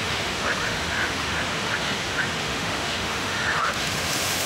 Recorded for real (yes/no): no